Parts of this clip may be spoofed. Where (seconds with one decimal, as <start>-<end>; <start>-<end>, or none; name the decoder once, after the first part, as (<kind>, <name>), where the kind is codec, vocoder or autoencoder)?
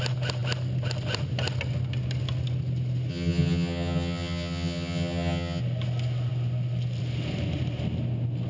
3.1-5.6 (vocoder, HiFi-GAN)